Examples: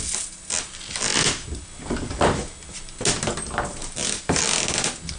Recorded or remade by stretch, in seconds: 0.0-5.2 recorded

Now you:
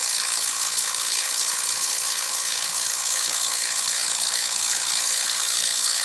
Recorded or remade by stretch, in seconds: 0.0-6.0 remade